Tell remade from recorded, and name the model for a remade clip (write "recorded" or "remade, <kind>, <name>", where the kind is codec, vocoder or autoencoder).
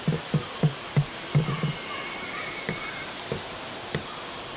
recorded